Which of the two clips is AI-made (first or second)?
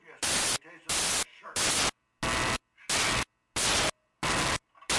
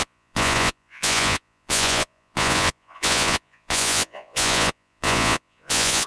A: second